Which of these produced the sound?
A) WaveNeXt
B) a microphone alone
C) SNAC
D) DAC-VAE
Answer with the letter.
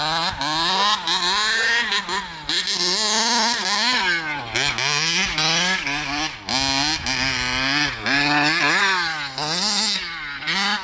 B